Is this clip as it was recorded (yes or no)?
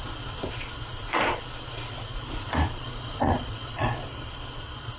no